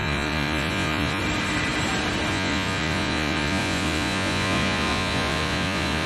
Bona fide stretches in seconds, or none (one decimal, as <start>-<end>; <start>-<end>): 1.2-2.3